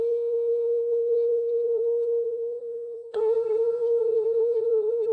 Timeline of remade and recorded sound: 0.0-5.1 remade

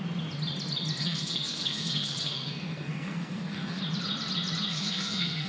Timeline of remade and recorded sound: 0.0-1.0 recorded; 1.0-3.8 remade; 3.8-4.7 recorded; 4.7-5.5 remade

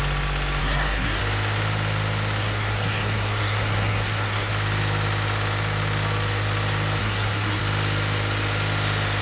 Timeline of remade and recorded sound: 0.0-0.6 recorded; 0.6-1.2 remade; 1.2-2.4 recorded; 2.4-4.5 remade; 4.5-7.0 recorded; 7.0-7.6 remade; 7.6-9.2 recorded

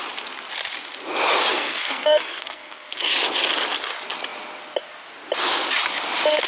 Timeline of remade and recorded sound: 0.0-1.5 recorded; 1.5-3.1 remade; 3.1-6.5 recorded

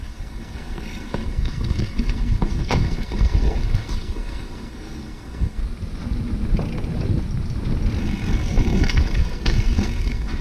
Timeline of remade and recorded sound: 0.0-5.6 remade; 5.6-8.0 recorded; 8.0-10.4 remade